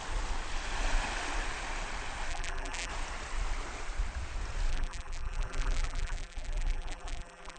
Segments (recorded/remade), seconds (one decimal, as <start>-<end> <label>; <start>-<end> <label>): 0.0-2.3 recorded; 2.3-2.9 remade; 2.9-4.7 recorded; 4.7-7.6 remade